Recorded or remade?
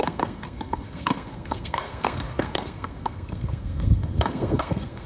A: remade